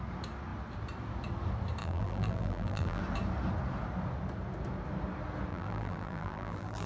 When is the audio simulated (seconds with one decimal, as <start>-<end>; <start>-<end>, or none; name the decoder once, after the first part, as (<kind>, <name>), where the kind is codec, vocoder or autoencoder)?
1.8-3.0 (vocoder, BigVGAN v2); 5.5-6.9